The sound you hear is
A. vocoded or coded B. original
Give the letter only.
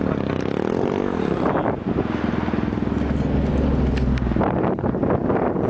B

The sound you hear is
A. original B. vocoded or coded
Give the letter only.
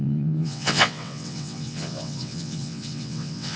B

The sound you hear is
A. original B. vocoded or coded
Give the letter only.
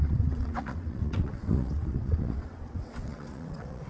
B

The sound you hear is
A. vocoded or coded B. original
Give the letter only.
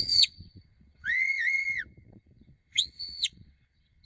A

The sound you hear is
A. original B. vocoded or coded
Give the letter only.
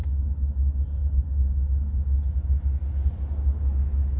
A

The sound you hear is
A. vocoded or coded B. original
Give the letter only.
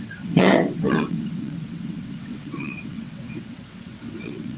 A